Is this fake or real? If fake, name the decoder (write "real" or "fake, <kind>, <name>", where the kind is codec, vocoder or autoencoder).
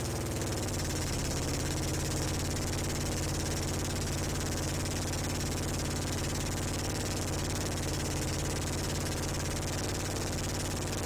real